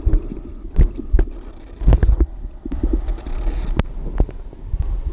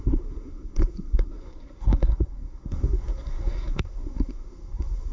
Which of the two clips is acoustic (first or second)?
first